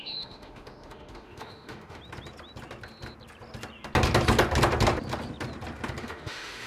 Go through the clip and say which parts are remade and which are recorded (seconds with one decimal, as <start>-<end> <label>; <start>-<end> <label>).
0.0-2.0 remade; 2.0-6.0 recorded; 6.0-6.7 remade